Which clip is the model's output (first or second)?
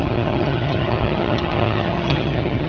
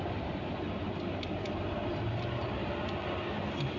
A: first